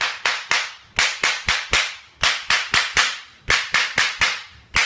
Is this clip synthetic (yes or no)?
yes